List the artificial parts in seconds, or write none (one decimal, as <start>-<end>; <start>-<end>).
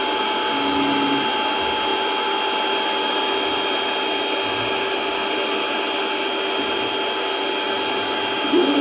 none